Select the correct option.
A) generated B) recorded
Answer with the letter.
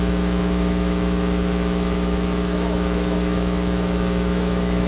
A